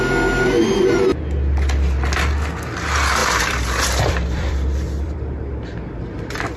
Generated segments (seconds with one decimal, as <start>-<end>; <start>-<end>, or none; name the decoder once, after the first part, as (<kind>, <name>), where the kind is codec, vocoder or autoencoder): 3.2-5.2 (vocoder, BigVGAN v2)